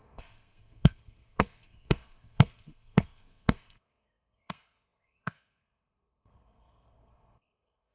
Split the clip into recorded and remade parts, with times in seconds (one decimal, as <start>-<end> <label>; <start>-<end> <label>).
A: 0.0-7.9 remade